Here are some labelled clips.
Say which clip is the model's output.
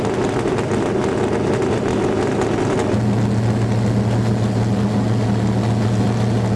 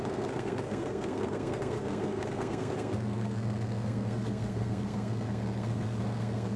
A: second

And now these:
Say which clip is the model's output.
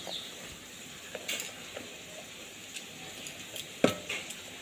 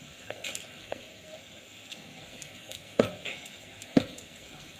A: second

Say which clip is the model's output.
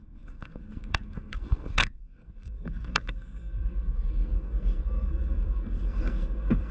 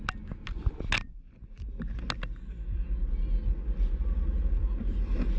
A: first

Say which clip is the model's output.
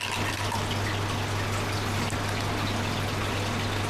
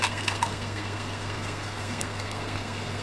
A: second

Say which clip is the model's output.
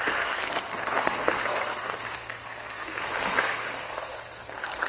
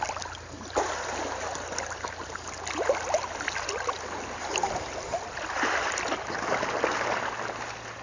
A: first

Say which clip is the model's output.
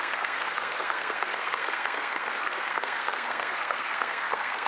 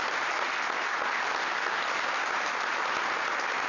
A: first